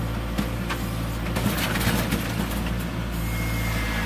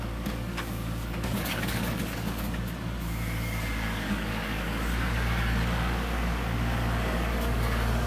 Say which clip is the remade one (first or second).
second